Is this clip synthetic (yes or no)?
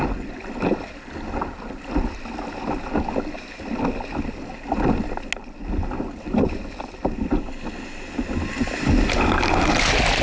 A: no